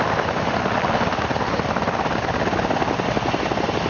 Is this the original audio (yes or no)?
yes